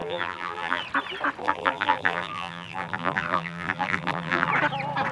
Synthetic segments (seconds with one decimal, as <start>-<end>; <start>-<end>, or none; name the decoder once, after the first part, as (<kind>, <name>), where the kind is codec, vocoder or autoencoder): 0.0-0.8 (vocoder, BigVGAN v2); 1.4-4.5